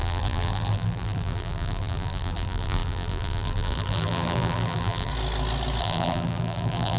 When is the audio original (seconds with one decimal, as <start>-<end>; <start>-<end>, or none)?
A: 5.1-5.8